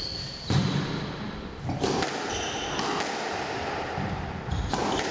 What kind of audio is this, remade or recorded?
recorded